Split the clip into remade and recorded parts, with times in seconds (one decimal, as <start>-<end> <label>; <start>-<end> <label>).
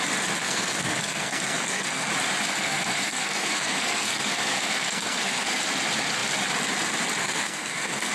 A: 0.0-0.4 recorded; 0.4-2.1 remade; 2.1-2.5 recorded; 2.5-5.6 remade; 5.6-7.2 recorded; 7.2-8.1 remade